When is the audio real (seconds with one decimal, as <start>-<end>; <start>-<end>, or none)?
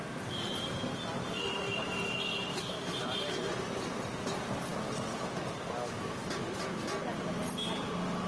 0.0-2.5; 3.0-8.3